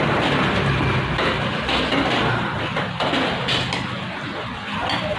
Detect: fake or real real